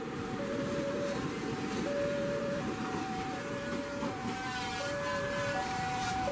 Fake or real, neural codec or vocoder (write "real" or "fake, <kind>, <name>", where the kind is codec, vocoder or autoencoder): fake, vocoder, BigVGAN v2